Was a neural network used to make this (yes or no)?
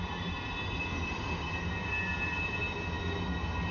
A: no